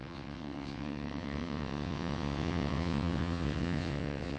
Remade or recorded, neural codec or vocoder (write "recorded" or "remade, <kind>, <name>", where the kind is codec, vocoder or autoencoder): remade, vocoder, WaveNeXt